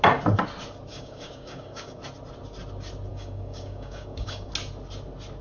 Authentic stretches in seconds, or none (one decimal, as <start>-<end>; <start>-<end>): 0.0-0.9; 2.0-3.1; 4.5-5.4